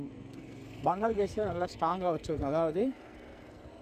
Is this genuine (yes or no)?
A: no